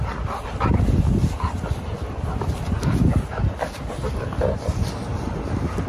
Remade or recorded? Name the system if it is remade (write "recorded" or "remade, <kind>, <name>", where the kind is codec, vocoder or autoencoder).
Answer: recorded